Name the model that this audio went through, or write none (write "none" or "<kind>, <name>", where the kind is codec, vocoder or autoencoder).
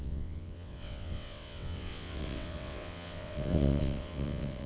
vocoder, WaveNeXt